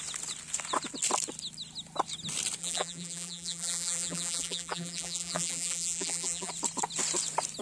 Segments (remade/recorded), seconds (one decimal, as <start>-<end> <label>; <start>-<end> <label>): 0.0-2.6 recorded; 2.6-6.5 remade; 6.5-7.6 recorded